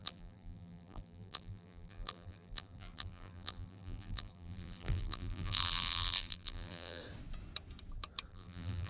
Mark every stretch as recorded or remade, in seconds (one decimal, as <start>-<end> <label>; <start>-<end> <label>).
0.0-7.0 remade; 7.0-8.3 recorded; 8.3-8.9 remade